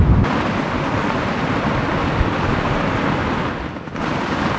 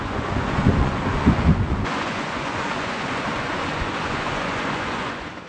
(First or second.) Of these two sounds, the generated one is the second